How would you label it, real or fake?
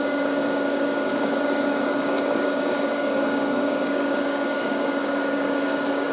fake